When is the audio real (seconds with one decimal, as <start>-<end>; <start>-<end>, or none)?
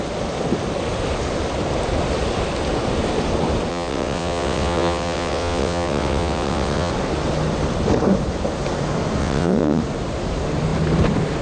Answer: 0.0-3.7; 6.9-9.2; 9.8-11.4